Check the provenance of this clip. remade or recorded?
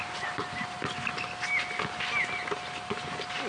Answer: recorded